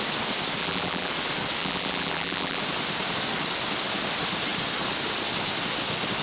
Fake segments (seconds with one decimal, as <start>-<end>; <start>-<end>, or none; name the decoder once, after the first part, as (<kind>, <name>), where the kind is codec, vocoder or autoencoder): 0.6-1.1 (vocoder, BigVGAN v2); 1.6-2.6